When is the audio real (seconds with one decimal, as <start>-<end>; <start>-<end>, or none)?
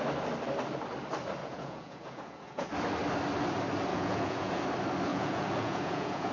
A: 0.0-1.4; 2.7-3.9; 4.6-5.1